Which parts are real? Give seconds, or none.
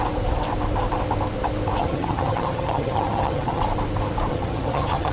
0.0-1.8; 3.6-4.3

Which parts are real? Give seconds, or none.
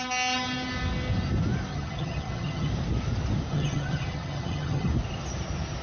0.0-1.7; 2.7-3.5; 4.9-5.8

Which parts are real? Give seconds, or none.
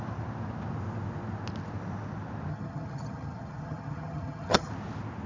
0.0-2.5; 4.7-5.3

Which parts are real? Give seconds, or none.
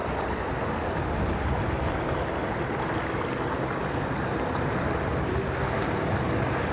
0.0-6.7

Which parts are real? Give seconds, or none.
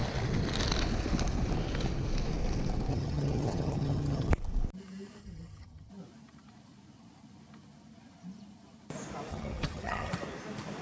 0.0-2.9; 4.3-5.2; 5.9-9.3; 10.1-10.8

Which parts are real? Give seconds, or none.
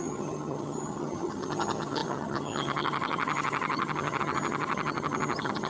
none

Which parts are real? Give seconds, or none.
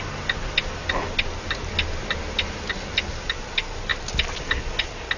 0.0-5.2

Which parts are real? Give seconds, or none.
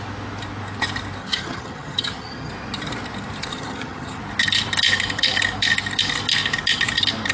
0.0-1.2; 2.5-3.5; 4.2-7.3